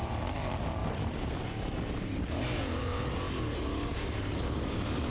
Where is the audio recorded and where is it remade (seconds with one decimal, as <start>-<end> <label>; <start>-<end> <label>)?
0.0-0.8 recorded; 0.8-3.1 remade; 3.1-5.1 recorded